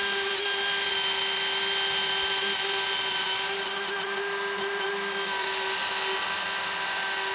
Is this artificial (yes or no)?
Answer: no